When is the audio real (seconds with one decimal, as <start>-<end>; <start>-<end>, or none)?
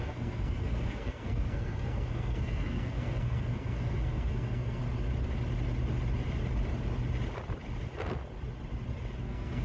4.8-9.2